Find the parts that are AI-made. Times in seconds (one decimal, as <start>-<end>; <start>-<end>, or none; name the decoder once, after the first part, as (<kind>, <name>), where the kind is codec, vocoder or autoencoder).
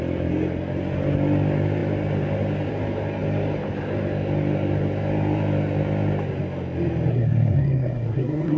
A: 7.1-8.6 (codec, SNAC)